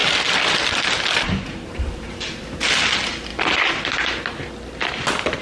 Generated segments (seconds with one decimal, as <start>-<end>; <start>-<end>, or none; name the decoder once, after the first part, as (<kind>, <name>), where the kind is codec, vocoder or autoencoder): none